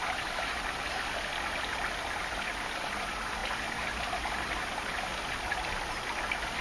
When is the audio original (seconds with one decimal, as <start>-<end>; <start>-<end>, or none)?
0.0-6.6